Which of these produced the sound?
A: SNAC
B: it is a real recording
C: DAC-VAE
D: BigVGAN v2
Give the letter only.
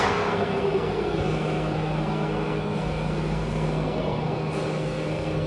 A